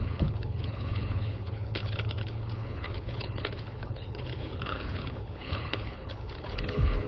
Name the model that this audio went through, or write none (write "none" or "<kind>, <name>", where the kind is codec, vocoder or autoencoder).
codec, HILCodec